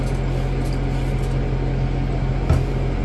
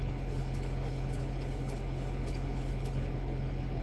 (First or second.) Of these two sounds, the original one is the first